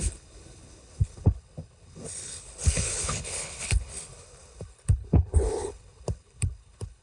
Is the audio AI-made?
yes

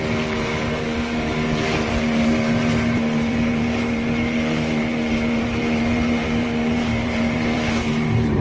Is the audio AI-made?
yes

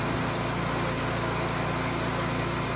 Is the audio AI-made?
no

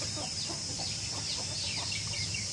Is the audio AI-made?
no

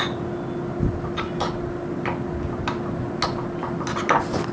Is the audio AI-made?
no